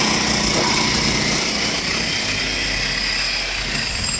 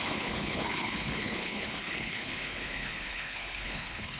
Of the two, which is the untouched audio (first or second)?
first